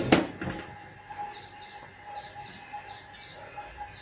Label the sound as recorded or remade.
recorded